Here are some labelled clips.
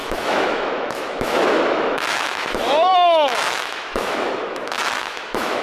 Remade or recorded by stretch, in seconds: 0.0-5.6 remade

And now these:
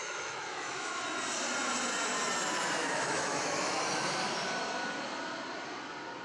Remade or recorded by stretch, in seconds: 0.0-1.0 remade; 1.0-2.8 recorded; 2.8-3.8 remade; 3.8-6.2 recorded

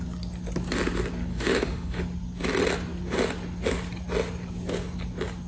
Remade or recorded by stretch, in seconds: 0.0-1.3 recorded; 1.3-2.0 remade; 2.0-5.5 recorded

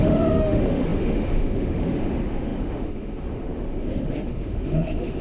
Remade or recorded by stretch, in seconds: 0.0-5.2 remade

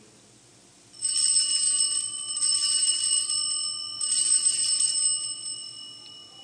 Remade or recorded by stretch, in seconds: 0.0-6.4 recorded

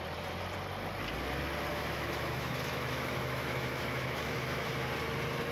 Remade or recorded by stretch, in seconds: 0.0-1.7 recorded; 1.7-4.7 remade; 4.7-5.5 recorded

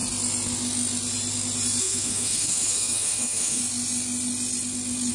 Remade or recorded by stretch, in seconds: 0.0-1.8 recorded; 1.8-3.6 remade; 3.6-5.1 recorded